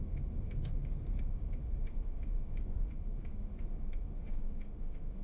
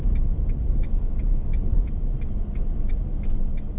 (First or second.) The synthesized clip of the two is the first